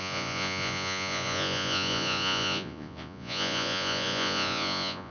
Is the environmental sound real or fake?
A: fake